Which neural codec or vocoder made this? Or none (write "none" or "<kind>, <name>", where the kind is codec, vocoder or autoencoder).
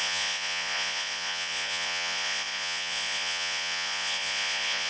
vocoder, Vocos